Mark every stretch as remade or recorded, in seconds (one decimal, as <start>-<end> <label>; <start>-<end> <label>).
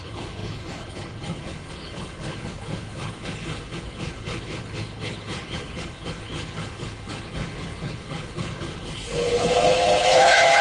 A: 0.0-10.6 remade